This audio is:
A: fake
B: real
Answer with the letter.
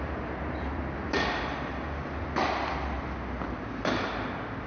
B